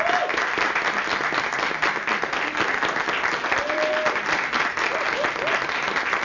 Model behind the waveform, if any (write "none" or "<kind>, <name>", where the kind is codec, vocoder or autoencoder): none